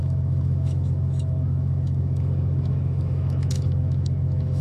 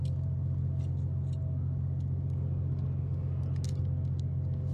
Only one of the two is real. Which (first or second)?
second